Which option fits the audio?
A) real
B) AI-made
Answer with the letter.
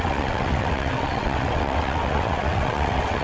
B